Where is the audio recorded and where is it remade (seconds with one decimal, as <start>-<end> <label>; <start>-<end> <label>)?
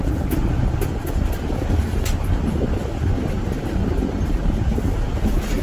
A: 0.0-5.6 recorded